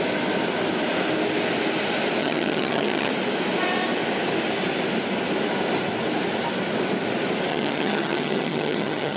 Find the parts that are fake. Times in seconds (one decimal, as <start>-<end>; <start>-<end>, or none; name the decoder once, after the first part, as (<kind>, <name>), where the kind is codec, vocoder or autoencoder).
2.2-3.1 (vocoder, HiFi-GAN); 7.5-9.2